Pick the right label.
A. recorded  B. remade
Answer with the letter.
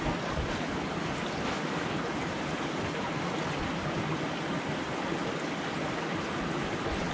A